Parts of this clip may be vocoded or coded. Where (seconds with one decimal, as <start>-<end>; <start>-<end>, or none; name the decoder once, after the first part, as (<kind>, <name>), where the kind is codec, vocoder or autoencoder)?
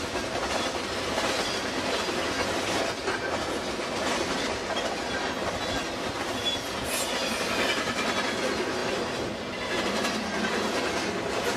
none